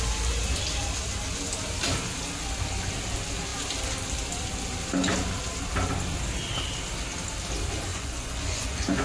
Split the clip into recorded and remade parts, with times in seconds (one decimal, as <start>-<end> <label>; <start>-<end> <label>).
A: 0.0-7.9 recorded; 7.9-9.0 remade